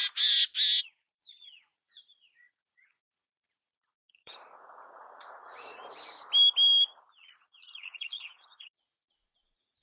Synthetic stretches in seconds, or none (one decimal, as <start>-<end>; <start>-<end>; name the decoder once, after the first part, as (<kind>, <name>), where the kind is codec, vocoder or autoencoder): 0.8-5.8 (vocoder, Vocos); 7.2-9.8